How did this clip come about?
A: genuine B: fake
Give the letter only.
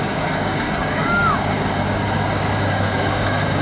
B